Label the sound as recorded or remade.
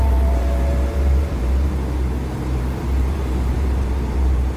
remade